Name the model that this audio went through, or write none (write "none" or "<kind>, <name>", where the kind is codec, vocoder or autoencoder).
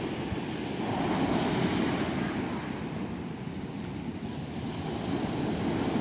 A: none